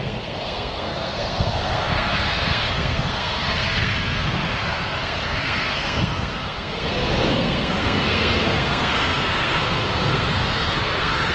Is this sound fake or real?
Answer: fake